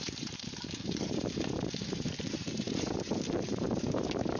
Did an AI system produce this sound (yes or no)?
yes